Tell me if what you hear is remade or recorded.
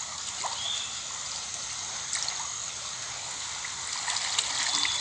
recorded